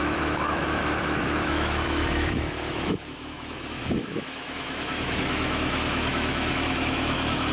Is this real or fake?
fake